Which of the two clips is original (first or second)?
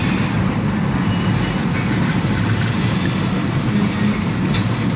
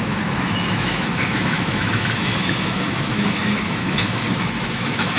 first